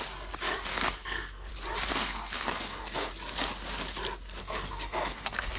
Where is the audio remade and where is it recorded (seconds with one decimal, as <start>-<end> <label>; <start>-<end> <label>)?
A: 0.0-0.7 recorded; 0.7-1.5 remade; 1.5-1.9 recorded; 1.9-3.1 remade; 3.1-4.4 recorded; 4.4-5.6 remade